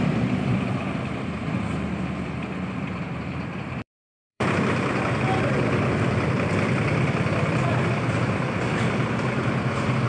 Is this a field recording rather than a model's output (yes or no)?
no